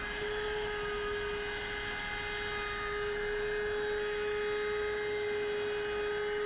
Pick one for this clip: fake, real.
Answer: real